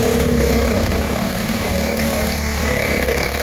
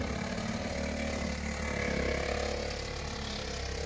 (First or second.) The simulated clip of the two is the first